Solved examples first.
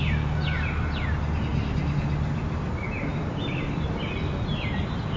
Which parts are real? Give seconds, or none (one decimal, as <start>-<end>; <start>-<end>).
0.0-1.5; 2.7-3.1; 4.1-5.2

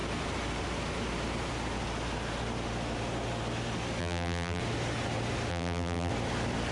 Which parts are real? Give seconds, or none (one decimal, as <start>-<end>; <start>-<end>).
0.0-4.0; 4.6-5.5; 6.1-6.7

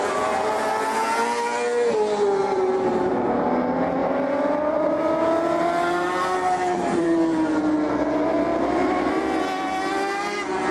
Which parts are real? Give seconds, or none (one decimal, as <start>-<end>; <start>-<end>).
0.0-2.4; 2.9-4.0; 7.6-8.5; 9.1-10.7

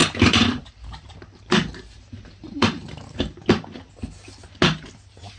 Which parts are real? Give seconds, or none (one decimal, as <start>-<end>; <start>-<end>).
3.2-5.4

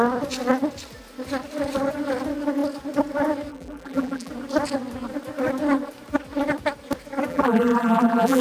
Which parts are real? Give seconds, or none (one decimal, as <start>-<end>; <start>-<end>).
0.0-3.5; 4.3-7.3

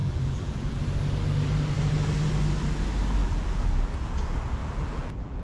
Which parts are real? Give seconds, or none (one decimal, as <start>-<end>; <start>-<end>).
0.8-3.2; 3.9-4.6